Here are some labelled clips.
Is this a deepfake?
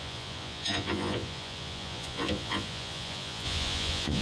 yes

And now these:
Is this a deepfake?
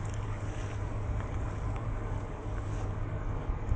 yes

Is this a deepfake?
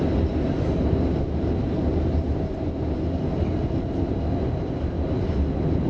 no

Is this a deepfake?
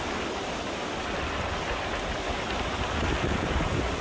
no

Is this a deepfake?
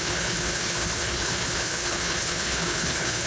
yes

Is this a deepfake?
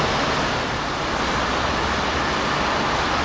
no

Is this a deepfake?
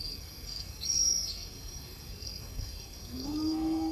yes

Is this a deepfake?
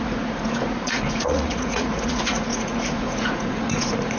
yes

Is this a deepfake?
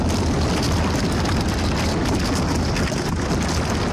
no